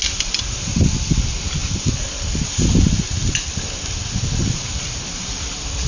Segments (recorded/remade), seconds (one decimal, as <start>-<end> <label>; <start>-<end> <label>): 0.0-5.9 recorded